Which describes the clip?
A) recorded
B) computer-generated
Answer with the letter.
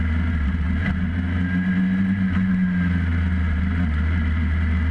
A